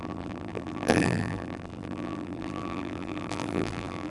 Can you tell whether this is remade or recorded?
remade